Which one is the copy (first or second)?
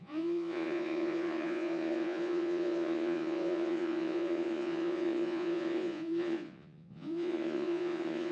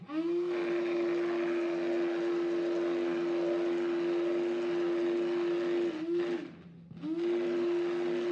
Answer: first